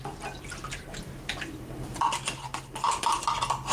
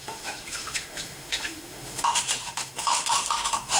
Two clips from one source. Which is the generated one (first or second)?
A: second